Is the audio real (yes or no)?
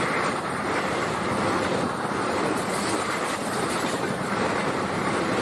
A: no